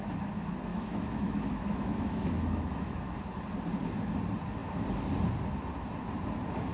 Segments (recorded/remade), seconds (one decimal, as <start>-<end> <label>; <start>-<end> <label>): 0.0-0.7 recorded; 0.7-3.0 remade; 3.0-6.7 recorded